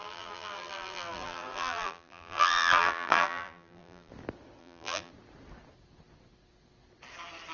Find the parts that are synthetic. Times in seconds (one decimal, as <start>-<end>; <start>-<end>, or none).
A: 0.0-4.1; 4.6-5.1